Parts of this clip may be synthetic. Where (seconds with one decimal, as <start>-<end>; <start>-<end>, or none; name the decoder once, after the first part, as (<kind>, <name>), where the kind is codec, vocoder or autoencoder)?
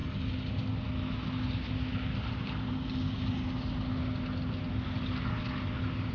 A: none